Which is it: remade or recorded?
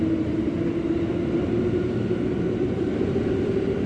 recorded